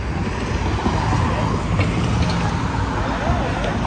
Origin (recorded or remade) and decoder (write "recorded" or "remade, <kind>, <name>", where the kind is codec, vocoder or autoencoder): recorded